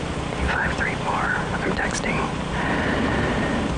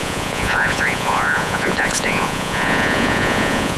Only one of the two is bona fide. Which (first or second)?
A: first